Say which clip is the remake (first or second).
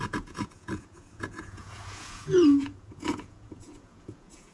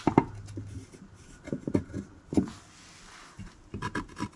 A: first